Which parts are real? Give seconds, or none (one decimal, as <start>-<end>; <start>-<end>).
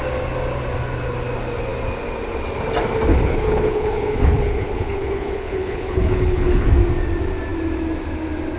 0.0-3.1; 6.7-8.6